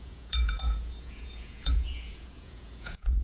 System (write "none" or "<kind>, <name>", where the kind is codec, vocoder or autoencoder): vocoder, Vocos